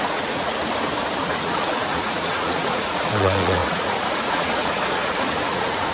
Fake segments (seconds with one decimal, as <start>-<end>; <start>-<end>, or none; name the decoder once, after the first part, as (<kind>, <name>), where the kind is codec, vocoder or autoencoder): 0.0-0.6 (vocoder, Vocos); 1.2-5.9